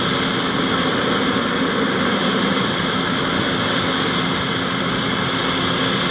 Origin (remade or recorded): recorded